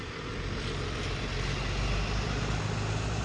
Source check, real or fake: real